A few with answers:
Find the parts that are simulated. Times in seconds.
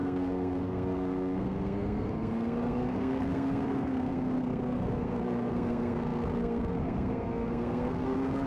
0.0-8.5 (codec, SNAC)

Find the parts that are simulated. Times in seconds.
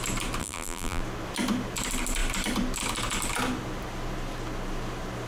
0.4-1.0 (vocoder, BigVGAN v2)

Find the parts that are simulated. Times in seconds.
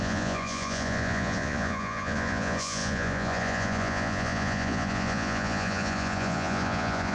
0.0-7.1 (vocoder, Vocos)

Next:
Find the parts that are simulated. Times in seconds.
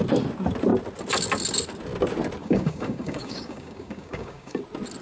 2.4-4.6 (codec, DAC)